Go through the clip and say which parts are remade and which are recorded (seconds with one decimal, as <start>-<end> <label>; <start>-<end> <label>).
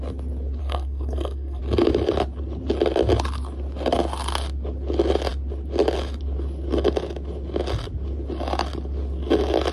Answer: 0.0-0.6 recorded; 0.6-1.6 remade; 1.6-9.7 recorded